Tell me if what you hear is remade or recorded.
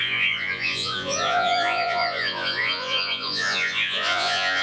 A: remade